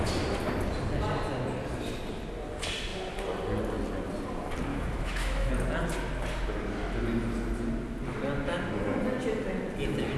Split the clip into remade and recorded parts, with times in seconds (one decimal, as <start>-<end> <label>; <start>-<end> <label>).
0.0-4.7 recorded; 4.7-5.5 remade; 5.5-10.2 recorded